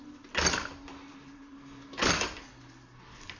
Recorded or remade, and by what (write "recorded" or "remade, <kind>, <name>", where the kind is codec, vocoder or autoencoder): recorded